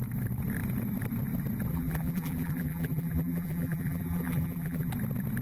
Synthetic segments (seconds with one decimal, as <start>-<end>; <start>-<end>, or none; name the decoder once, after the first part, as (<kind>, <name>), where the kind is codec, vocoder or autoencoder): 1.7-4.9 (vocoder, BigVGAN v2)